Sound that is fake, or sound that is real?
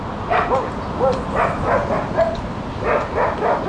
real